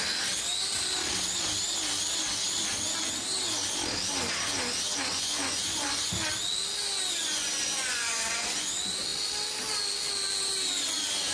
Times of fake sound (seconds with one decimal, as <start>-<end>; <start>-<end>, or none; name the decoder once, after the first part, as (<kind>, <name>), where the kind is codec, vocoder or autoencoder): 5.1-6.1 (vocoder, Vocos); 7.2-8.7